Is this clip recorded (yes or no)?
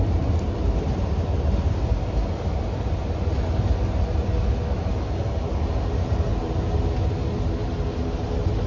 yes